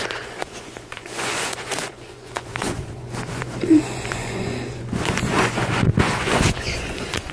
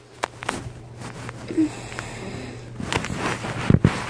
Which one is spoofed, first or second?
first